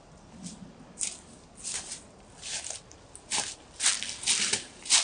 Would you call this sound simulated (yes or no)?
no